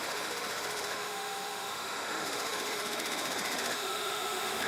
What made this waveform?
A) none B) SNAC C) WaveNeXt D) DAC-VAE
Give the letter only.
D